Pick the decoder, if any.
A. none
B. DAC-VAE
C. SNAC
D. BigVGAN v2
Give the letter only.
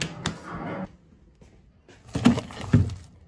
A